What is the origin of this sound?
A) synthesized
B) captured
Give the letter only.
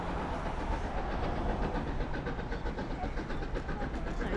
B